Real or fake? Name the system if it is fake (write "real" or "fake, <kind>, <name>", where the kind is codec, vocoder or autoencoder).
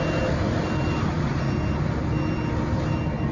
real